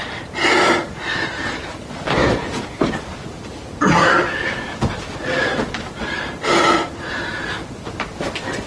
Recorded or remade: remade